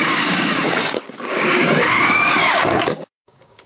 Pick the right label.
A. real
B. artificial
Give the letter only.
B